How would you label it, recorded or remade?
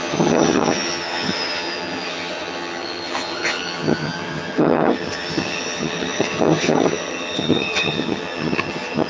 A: remade